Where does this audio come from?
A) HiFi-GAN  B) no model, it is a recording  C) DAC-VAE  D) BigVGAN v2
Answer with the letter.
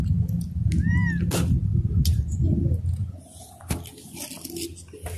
B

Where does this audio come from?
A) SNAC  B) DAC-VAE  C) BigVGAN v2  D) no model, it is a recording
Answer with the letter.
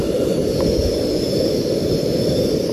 D